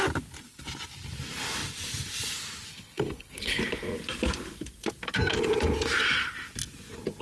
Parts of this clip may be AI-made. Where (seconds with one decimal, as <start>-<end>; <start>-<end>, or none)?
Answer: 2.7-3.6